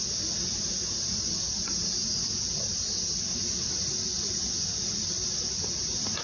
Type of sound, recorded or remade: recorded